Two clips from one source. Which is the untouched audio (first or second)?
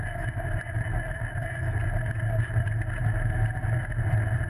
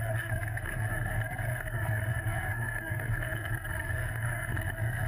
first